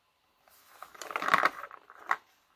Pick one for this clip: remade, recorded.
recorded